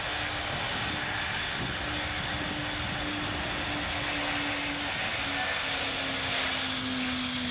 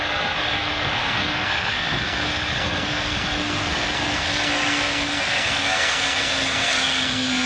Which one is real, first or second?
first